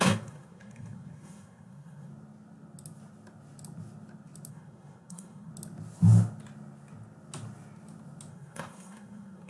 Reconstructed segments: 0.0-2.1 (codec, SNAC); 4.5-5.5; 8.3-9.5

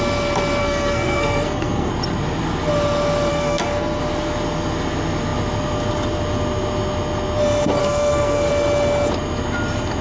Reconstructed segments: 0.6-1.9 (codec, SNAC); 3.3-4.0; 7.8-8.5

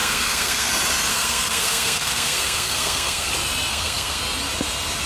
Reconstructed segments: 0.0-0.7 (codec, SNAC); 1.1-3.3; 3.7-4.2